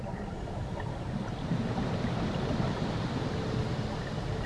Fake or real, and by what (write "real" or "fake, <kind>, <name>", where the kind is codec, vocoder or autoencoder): real